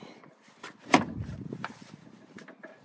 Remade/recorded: recorded